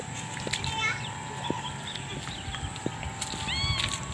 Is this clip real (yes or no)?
yes